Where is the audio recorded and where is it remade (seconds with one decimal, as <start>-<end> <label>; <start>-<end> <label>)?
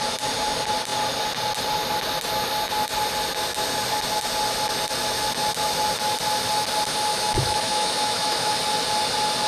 0.0-7.1 recorded; 7.1-8.5 remade; 8.5-9.5 recorded